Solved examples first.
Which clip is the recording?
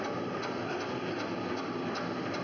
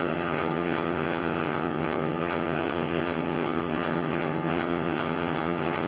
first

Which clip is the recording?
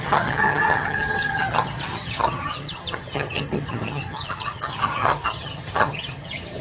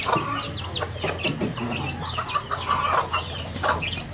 second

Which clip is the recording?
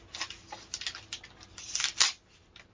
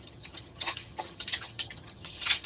first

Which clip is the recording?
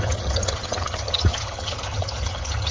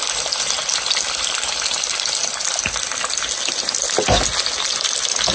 second